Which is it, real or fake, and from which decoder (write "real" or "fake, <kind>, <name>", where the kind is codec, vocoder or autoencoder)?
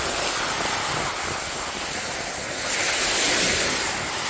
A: real